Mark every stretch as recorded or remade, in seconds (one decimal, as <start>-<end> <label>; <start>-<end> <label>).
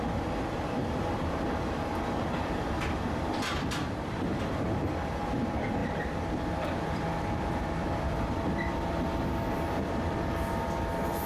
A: 0.0-11.3 remade